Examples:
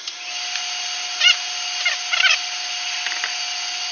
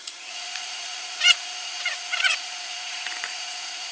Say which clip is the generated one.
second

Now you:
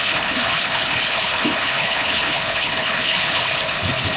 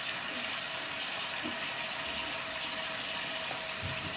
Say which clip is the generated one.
first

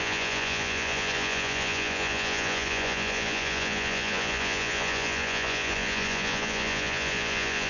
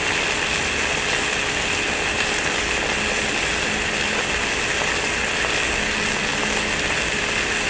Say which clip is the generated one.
first